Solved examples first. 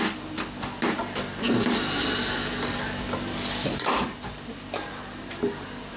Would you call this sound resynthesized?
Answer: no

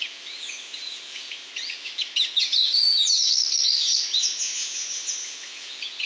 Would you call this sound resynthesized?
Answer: no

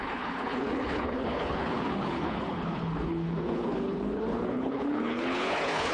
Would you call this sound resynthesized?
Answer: yes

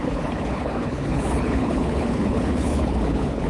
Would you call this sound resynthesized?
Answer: yes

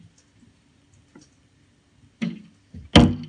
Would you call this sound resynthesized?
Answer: no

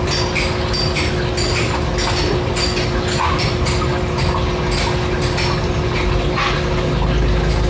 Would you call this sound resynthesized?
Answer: no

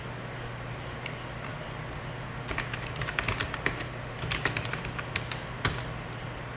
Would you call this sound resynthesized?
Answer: no